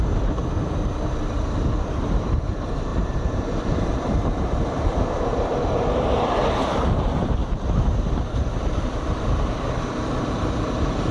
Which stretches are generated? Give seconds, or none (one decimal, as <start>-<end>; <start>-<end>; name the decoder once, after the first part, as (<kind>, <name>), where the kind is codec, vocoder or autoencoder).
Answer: 0.0-0.4 (vocoder, BigVGAN v2); 1.1-7.4; 8.3-11.1